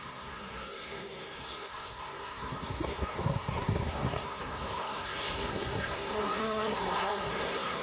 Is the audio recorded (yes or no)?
no